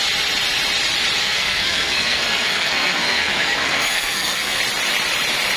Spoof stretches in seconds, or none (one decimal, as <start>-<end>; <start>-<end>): 1.2-4.6